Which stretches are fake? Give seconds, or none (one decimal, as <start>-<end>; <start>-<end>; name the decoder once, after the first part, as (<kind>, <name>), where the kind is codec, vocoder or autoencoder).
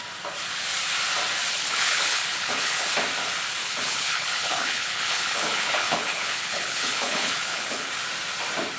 1.5-2.9 (codec, HILCodec); 3.6-7.9